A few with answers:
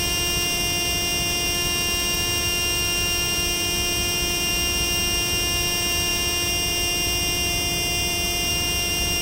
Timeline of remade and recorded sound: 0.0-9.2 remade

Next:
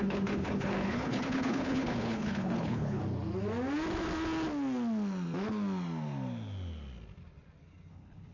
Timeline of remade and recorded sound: 0.0-3.0 remade; 3.0-7.9 recorded; 7.9-8.3 remade

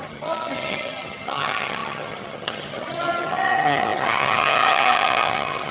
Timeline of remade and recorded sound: 0.0-5.7 remade

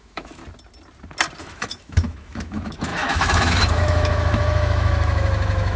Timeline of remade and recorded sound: 0.0-0.4 remade; 0.4-1.4 recorded; 1.4-5.8 remade

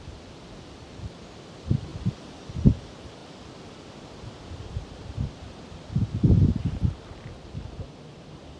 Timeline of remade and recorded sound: 0.0-1.9 recorded; 1.9-2.5 remade; 2.5-3.2 recorded; 3.2-5.4 remade; 5.4-8.6 recorded

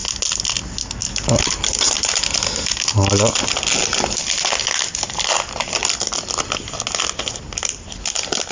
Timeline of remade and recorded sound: 0.0-8.5 recorded